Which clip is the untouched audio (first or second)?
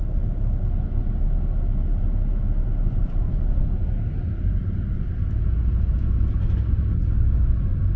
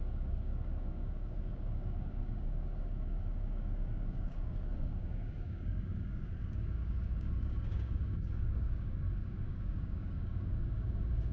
first